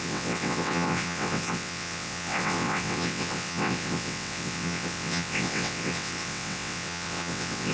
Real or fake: fake